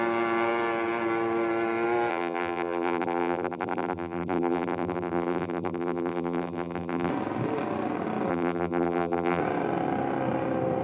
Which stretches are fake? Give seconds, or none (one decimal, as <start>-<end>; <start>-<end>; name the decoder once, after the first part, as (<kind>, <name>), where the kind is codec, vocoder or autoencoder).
2.1-7.1 (vocoder, BigVGAN v2); 8.3-9.4